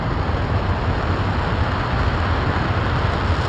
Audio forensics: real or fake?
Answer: real